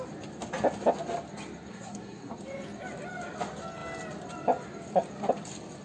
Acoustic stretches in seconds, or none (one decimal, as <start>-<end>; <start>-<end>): 0.0-1.7; 2.3-5.8